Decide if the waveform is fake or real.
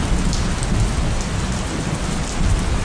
real